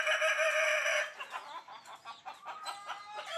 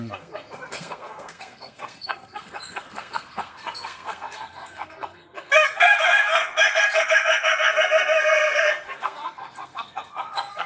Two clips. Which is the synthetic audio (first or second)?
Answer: second